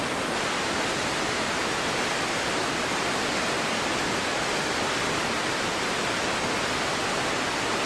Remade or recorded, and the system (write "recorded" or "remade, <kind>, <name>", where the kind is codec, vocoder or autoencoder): recorded